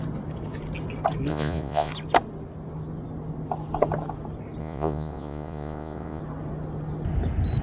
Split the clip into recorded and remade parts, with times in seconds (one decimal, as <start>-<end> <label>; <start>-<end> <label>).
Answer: 0.0-1.3 recorded; 1.3-1.9 remade; 1.9-4.6 recorded; 4.6-6.2 remade; 6.2-7.6 recorded